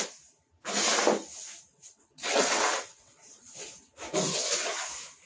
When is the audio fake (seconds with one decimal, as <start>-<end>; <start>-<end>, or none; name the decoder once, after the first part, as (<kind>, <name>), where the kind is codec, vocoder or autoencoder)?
1.7-3.7 (vocoder, WaveNeXt)